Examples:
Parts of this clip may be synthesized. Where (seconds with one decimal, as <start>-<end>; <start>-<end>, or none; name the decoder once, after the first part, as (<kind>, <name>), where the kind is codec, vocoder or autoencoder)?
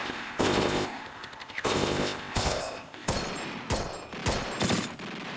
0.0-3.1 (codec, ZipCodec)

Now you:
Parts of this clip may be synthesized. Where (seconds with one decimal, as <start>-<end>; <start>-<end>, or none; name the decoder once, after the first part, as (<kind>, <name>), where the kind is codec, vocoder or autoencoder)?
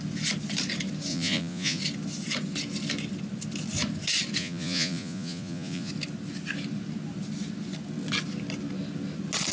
1.1-1.8 (vocoder, Vocos); 4.4-5.9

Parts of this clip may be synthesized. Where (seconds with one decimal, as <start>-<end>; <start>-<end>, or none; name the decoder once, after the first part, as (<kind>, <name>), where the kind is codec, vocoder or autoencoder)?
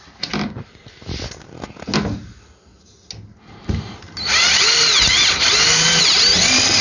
none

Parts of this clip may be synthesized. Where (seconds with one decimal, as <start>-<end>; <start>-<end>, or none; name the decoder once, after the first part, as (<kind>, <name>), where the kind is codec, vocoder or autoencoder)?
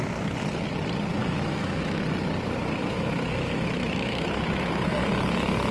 1.2-2.0 (autoencoder, DAC-VAE); 2.8-4.9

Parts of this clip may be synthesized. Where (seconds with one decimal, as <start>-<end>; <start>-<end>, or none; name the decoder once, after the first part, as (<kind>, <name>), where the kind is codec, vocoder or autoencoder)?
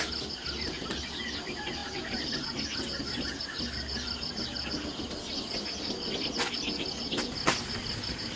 none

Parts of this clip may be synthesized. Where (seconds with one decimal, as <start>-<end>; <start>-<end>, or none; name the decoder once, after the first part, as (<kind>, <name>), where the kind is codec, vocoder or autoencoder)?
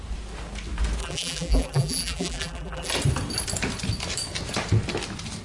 1.0-2.9 (vocoder, BigVGAN v2)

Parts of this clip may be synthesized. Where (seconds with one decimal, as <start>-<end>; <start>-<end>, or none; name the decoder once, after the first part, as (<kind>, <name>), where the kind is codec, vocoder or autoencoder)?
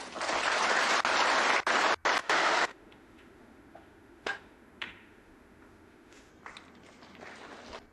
2.2-6.3 (autoencoder, DAC-VAE)